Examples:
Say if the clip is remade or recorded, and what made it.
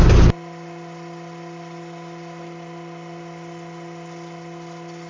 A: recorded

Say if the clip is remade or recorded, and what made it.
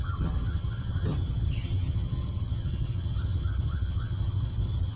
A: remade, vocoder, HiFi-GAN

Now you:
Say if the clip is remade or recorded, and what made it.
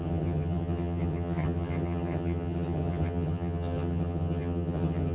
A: remade, vocoder, HiFi-GAN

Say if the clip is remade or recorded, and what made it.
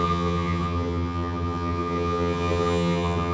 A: remade, vocoder, HiFi-GAN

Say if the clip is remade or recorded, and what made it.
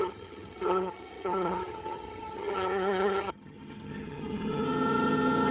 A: remade, vocoder, HiFi-GAN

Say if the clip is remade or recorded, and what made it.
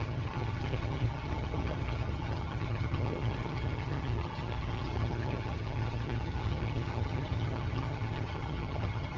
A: remade, vocoder, HiFi-GAN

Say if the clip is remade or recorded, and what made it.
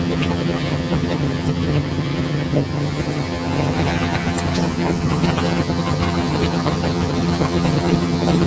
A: remade, vocoder, HiFi-GAN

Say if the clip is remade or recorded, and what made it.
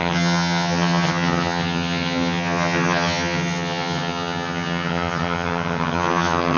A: remade, vocoder, HiFi-GAN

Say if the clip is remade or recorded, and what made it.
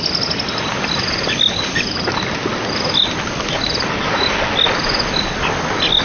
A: recorded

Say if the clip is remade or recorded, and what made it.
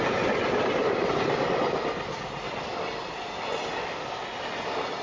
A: recorded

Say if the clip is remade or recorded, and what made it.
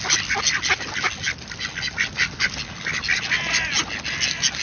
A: recorded